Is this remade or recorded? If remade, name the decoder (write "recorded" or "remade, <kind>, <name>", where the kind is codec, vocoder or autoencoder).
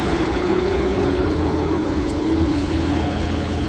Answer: remade, codec, HILCodec